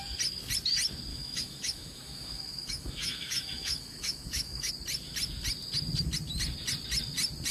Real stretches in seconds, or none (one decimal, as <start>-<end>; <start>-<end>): 0.0-1.1; 4.7-7.5